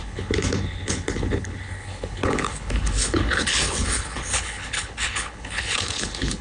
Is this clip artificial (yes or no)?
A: yes